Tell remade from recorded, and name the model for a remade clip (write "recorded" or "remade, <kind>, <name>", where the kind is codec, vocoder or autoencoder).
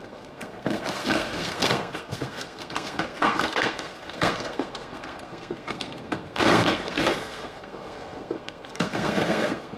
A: remade, codec, SNAC